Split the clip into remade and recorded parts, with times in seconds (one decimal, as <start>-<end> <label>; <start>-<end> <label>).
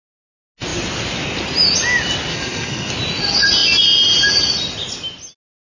0.0-2.3 recorded; 2.3-2.9 remade; 2.9-5.6 recorded